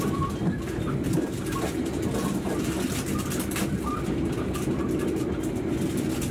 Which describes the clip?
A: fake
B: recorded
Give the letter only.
B